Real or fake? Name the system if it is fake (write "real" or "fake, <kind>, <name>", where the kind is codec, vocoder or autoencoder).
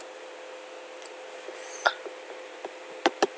real